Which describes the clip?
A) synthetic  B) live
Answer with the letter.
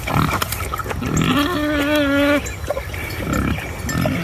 B